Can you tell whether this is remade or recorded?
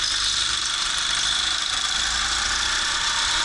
recorded